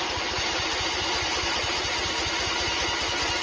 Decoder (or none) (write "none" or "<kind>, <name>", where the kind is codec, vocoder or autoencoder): none